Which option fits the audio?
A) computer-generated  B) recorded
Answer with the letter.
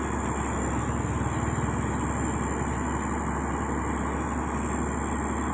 B